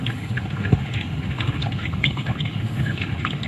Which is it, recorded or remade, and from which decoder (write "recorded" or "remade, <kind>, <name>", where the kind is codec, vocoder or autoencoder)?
remade, autoencoder, DAC-VAE